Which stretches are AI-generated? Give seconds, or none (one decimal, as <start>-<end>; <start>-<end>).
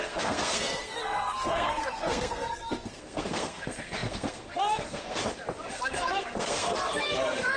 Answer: 0.0-5.2; 5.7-7.6